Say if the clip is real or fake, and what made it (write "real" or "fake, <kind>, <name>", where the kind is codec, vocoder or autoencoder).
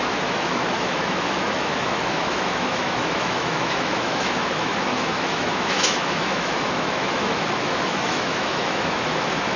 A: fake, autoencoder, DAC-VAE